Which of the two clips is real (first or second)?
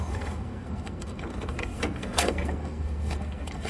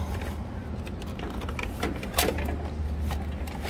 second